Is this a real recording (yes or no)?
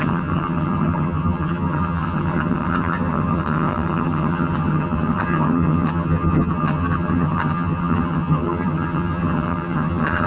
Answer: no